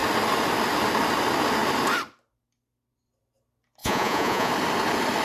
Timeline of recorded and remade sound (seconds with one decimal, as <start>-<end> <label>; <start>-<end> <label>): 0.0-3.8 recorded; 3.8-4.5 remade; 4.5-5.2 recorded